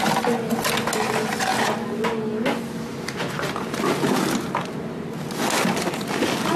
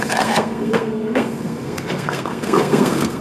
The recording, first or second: first